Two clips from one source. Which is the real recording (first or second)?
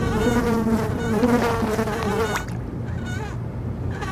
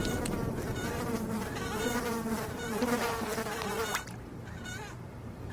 first